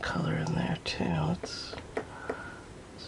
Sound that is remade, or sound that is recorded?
remade